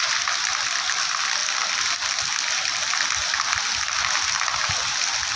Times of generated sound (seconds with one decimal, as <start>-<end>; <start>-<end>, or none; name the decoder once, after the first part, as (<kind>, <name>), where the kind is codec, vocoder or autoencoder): none